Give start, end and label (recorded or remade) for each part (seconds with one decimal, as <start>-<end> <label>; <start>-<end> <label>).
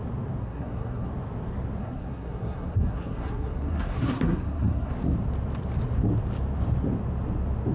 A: 0.0-0.4 recorded; 0.4-1.1 remade; 1.1-1.8 recorded; 1.8-4.9 remade; 4.9-7.7 recorded